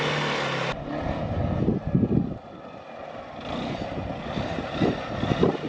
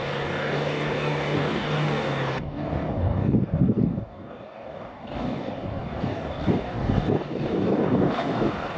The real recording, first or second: first